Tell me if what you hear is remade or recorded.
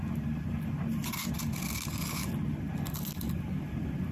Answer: recorded